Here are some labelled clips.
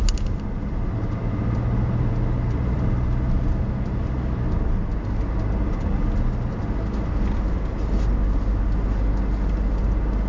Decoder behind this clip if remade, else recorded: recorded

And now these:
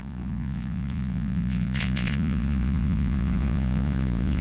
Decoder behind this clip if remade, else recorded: remade, vocoder, Vocos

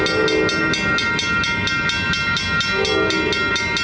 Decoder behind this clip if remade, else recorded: recorded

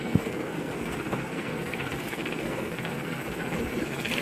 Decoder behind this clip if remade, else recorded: remade, codec, SNAC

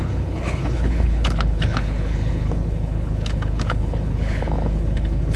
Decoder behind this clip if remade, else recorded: remade, codec, HILCodec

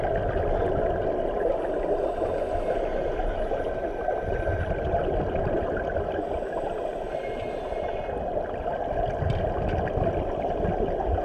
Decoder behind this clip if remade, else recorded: recorded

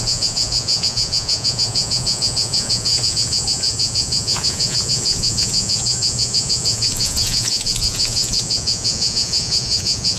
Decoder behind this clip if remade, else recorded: remade, vocoder, Vocos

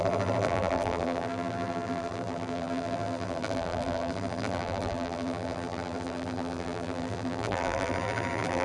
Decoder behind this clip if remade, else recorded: remade, vocoder, BigVGAN v2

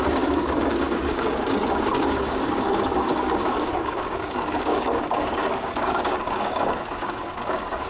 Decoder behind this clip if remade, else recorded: remade, codec, DAC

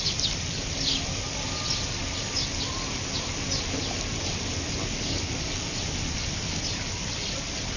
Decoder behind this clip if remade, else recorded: recorded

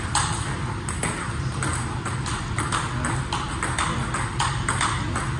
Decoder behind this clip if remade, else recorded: recorded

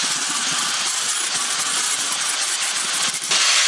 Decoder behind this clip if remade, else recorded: recorded